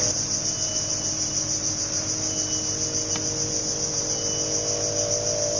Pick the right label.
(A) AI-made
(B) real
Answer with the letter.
B